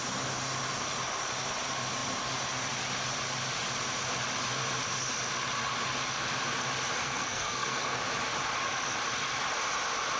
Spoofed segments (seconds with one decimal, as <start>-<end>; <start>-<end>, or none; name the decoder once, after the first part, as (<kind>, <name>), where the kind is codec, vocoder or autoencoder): 7.0-8.0 (codec, SNAC)